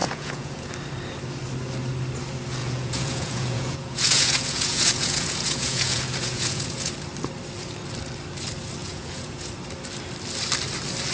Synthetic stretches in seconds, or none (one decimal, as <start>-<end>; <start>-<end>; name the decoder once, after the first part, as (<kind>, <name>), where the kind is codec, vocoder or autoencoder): 0.0-0.7 (vocoder, Vocos); 2.6-6.9; 8.8-9.5